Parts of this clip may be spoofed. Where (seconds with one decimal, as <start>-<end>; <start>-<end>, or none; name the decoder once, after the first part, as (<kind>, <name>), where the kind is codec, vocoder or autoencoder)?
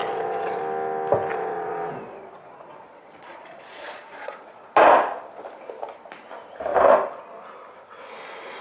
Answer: 0.0-0.6 (vocoder, Vocos); 1.3-4.7